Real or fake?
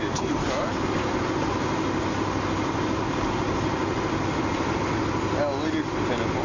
real